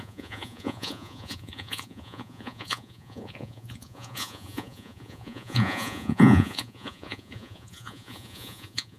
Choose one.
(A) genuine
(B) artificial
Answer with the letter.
B